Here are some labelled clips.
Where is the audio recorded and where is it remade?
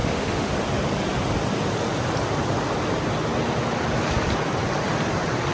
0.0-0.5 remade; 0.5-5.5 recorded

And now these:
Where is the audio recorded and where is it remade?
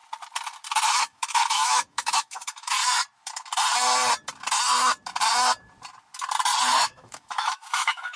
0.0-1.0 recorded; 1.0-2.8 remade; 2.8-6.6 recorded; 6.6-8.2 remade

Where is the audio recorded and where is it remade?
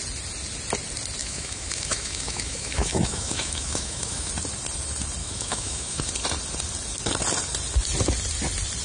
0.0-1.2 recorded; 1.2-4.3 remade; 4.3-5.2 recorded; 5.2-6.1 remade; 6.1-8.8 recorded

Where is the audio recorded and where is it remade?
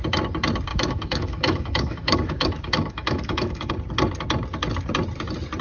0.0-0.7 recorded; 0.7-3.7 remade; 3.7-5.6 recorded